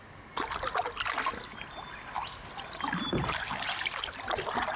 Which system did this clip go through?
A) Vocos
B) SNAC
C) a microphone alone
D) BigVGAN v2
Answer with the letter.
C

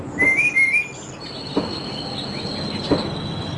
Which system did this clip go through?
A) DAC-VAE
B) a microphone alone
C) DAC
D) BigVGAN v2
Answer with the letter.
B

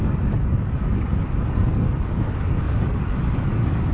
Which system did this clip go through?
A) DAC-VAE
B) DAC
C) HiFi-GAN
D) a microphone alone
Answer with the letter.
B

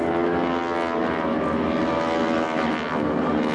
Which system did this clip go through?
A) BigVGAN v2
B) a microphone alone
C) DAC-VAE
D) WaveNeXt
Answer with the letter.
B